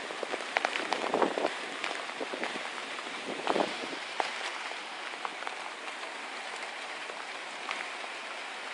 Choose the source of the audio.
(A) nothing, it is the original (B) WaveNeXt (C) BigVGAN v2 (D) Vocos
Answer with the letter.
C